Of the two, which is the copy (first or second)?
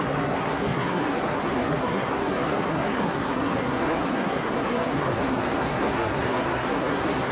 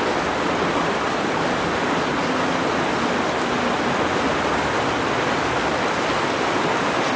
first